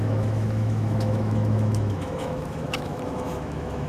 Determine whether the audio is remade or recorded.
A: remade